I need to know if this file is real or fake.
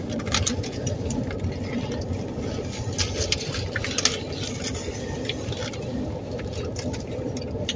real